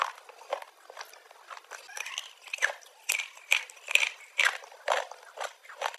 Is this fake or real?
real